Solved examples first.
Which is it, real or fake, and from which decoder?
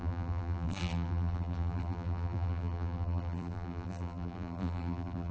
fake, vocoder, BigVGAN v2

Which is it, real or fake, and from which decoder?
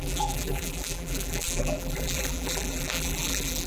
fake, vocoder, BigVGAN v2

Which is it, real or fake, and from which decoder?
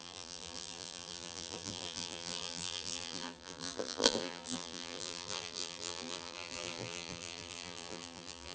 fake, vocoder, BigVGAN v2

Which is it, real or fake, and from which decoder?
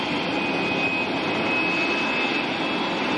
real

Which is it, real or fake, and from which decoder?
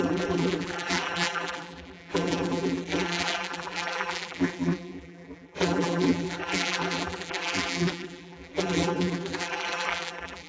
fake, vocoder, BigVGAN v2